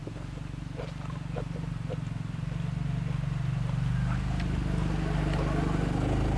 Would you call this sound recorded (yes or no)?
yes